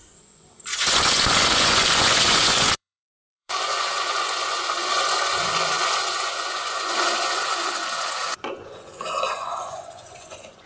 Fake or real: fake